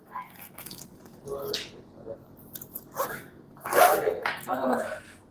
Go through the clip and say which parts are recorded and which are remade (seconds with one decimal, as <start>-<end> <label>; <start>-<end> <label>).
0.0-1.2 remade; 1.2-3.2 recorded; 3.2-5.3 remade